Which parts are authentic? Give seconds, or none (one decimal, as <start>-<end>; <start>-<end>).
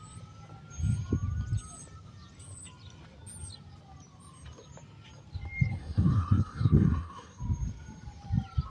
0.0-5.7; 7.4-8.7